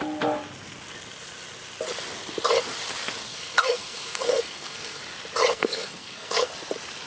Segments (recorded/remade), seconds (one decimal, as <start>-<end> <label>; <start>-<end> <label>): 0.0-3.3 recorded; 3.3-5.0 remade; 5.0-5.5 recorded; 5.5-6.5 remade; 6.5-7.1 recorded